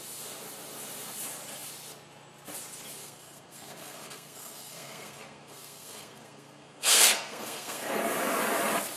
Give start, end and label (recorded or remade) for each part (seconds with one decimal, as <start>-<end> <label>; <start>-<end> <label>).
0.0-3.0 recorded; 3.0-8.0 remade; 8.0-9.0 recorded